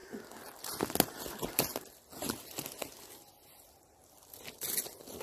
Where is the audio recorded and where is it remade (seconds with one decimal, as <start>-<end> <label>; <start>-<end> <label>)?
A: 0.0-5.2 recorded